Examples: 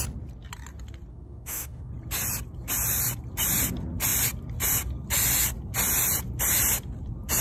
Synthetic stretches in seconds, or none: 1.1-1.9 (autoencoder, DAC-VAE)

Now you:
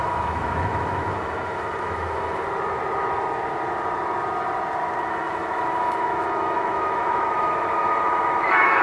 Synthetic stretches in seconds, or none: 0.0-2.4 (autoencoder, DAC-VAE); 5.0-8.8

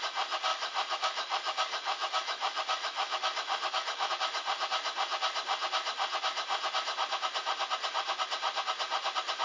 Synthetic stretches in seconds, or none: 0.5-4.1 (autoencoder, DAC-VAE)

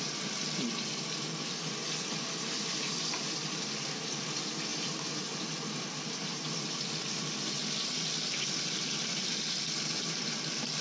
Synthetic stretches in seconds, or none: none

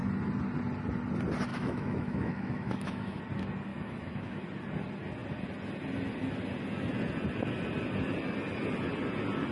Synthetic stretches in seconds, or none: 1.5-3.2 (autoencoder, DAC-VAE); 3.7-4.4